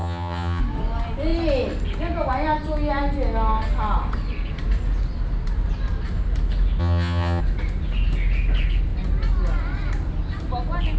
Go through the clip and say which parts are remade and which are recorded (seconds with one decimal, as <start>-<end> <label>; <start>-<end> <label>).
0.0-0.6 remade; 0.6-6.8 recorded; 6.8-7.4 remade; 7.4-11.0 recorded